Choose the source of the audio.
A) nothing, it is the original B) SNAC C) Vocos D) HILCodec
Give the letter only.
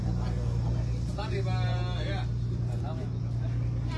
A